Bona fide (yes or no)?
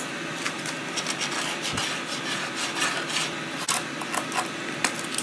yes